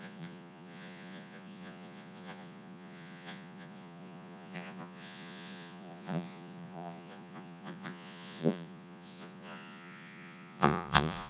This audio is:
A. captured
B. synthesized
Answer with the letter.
B